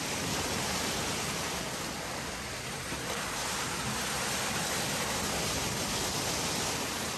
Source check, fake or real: real